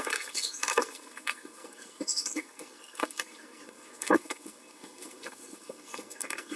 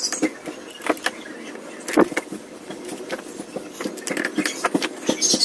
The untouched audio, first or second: second